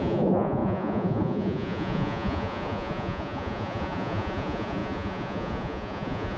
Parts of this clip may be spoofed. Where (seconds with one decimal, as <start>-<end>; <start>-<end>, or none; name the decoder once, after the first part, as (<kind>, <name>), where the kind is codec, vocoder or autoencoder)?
0.0-6.4 (vocoder, Vocos)